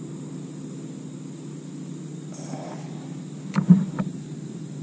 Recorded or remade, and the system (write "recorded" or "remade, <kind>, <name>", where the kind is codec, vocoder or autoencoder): recorded